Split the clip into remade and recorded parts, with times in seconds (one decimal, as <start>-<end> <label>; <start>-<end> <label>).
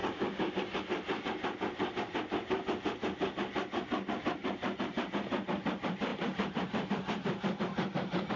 0.0-0.8 remade; 0.8-4.4 recorded; 4.4-5.1 remade; 5.1-6.1 recorded; 6.1-8.4 remade